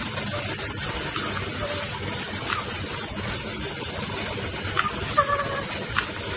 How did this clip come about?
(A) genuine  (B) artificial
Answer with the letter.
A